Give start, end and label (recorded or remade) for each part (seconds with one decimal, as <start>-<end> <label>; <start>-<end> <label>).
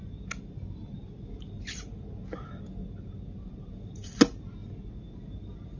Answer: 0.0-5.8 recorded